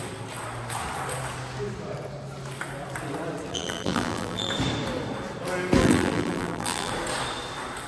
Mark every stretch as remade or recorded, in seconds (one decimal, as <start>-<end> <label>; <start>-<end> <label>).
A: 0.0-3.5 recorded; 3.5-4.5 remade; 4.5-5.8 recorded; 5.8-6.9 remade; 6.9-7.9 recorded